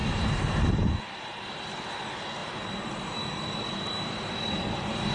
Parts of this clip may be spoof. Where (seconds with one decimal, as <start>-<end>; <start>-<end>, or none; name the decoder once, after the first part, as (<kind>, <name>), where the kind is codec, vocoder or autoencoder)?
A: 0.0-0.7 (vocoder, BigVGAN v2)